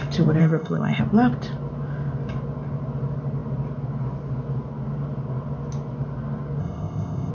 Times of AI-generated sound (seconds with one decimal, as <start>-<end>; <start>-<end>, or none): 0.4-1.0; 6.6-7.3